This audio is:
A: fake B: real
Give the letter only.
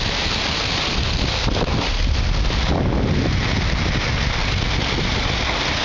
B